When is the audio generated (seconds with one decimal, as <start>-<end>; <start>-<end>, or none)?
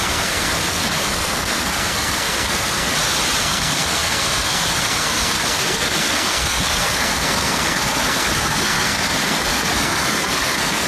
0.0-2.9; 3.4-10.9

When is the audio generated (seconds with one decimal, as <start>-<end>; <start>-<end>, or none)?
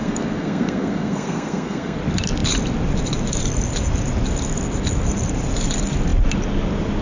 0.0-2.0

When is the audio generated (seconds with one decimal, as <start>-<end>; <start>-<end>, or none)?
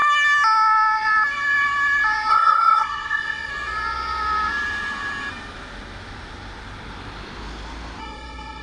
2.3-3.5; 8.0-8.6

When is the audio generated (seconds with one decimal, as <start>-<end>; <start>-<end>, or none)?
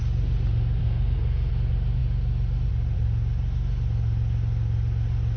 0.8-1.5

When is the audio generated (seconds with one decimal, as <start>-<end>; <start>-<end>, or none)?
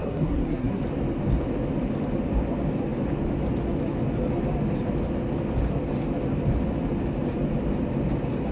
0.0-0.8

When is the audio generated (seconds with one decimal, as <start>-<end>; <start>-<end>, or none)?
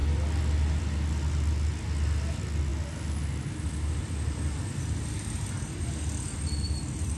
none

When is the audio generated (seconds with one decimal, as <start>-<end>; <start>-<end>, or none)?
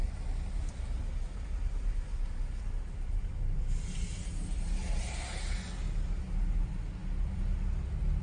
none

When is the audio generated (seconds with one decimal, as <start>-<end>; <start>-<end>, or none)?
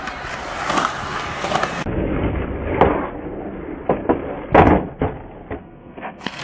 5.6-6.4